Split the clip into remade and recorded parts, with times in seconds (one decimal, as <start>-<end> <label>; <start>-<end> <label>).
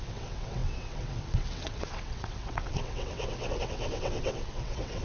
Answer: 0.0-5.0 remade